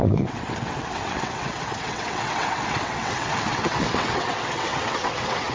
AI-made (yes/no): yes